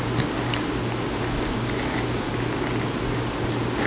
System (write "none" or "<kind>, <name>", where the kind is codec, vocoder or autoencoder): none